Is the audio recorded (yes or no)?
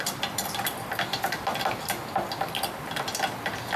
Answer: no